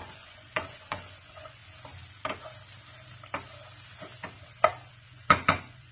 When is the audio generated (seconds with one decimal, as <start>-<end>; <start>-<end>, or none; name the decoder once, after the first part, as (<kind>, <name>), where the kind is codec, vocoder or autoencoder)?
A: 0.0-1.6 (vocoder, Vocos); 4.9-5.9